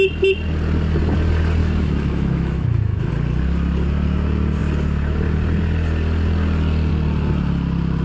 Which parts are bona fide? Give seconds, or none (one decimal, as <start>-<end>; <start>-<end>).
0.0-1.6; 3.1-8.0